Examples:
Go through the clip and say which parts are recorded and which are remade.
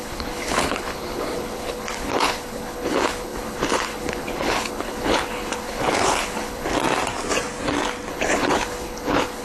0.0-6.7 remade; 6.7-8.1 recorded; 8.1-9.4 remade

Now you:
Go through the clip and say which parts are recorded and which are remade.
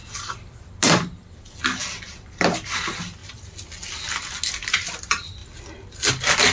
0.0-6.5 recorded